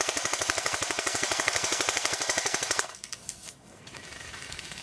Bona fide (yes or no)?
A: no